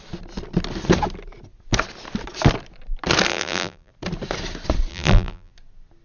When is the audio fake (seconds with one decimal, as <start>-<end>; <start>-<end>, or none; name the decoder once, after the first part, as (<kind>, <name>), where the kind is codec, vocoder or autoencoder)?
3.3-3.9 (vocoder, BigVGAN v2); 4.9-5.5